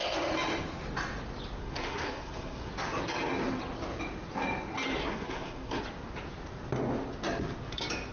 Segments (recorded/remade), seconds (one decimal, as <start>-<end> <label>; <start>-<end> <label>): 0.0-1.6 recorded; 1.6-2.7 remade; 2.7-5.0 recorded; 5.0-5.8 remade; 5.8-8.1 recorded

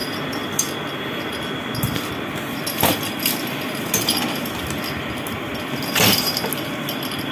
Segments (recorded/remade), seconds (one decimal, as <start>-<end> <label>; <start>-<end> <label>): 0.0-7.3 recorded